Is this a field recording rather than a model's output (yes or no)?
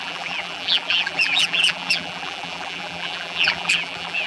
no